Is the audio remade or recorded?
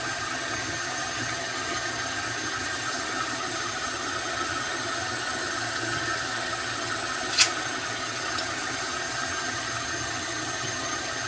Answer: remade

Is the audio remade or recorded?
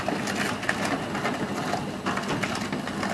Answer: recorded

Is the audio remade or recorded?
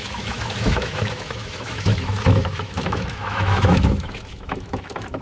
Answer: remade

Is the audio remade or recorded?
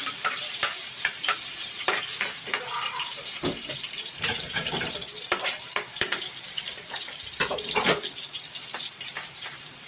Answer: remade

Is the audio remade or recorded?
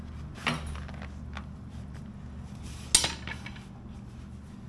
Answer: recorded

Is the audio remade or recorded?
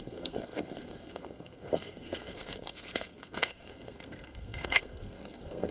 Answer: remade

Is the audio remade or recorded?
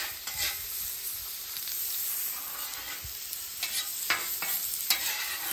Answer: recorded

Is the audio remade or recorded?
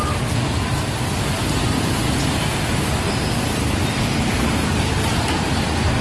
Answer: recorded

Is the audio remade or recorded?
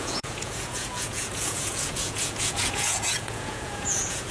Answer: remade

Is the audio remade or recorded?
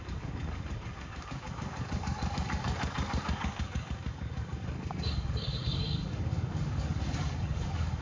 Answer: remade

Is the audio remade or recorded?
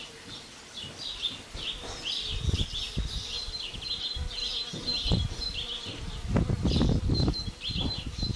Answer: recorded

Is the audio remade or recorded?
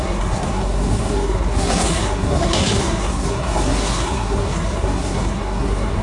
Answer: remade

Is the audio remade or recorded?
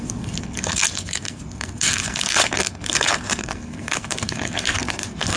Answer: remade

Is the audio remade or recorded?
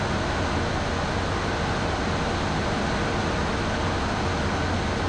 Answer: recorded